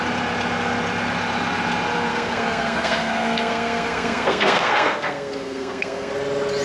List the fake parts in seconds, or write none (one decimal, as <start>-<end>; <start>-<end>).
2.1-6.1